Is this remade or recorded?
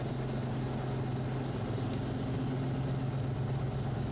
recorded